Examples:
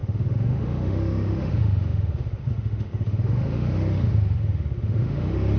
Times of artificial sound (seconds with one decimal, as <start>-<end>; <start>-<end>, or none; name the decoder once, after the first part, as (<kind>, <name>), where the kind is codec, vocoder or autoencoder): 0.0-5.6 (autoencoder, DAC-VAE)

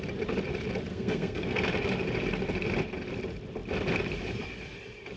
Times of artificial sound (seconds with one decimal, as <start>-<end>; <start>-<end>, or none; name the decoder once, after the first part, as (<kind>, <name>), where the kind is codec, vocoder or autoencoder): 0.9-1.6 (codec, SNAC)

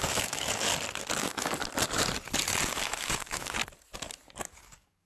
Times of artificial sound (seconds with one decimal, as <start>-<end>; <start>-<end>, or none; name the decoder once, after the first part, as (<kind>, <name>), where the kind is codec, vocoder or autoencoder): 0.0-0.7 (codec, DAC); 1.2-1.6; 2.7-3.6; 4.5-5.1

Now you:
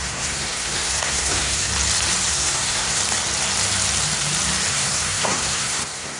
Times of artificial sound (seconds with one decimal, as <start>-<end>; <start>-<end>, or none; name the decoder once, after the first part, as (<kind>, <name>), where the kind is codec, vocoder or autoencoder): 0.0-1.7 (codec, SNAC); 2.3-3.0; 4.7-6.2